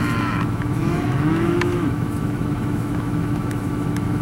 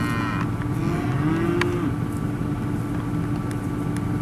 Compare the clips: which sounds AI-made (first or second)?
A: first